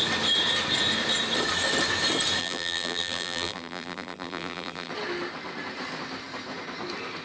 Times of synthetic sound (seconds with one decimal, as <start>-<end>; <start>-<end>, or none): 2.4-4.9